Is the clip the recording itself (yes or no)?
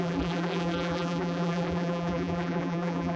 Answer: no